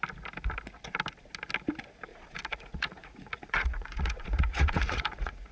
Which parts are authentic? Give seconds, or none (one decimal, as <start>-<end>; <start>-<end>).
0.0-2.1